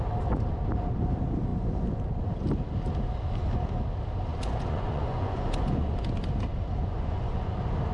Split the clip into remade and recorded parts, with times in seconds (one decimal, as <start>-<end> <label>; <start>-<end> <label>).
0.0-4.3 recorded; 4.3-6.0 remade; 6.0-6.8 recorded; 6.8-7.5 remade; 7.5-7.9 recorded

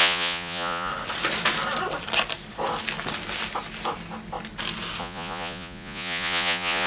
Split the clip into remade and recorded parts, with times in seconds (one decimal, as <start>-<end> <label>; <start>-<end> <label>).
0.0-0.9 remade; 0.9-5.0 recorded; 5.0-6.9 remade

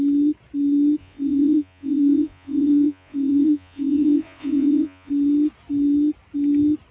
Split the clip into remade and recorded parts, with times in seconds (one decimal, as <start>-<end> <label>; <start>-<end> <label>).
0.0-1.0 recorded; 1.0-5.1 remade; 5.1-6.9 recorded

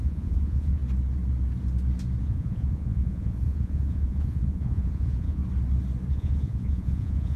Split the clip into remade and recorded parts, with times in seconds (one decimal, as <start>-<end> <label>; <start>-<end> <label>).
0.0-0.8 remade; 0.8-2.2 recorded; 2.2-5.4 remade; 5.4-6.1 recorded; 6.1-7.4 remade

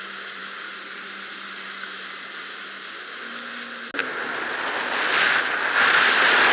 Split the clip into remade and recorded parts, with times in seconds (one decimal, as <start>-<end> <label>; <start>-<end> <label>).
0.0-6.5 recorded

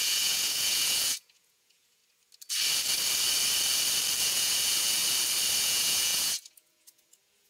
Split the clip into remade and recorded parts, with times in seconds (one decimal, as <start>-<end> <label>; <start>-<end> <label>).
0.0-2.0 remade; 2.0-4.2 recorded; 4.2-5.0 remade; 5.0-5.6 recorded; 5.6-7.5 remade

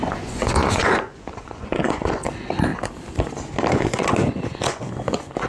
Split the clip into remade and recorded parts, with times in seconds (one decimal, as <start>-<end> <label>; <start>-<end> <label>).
0.0-2.7 remade; 2.7-3.7 recorded; 3.7-5.5 remade